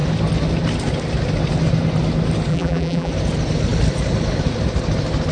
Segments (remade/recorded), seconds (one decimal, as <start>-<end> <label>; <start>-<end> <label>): 0.0-2.5 recorded; 2.5-3.1 remade; 3.1-5.3 recorded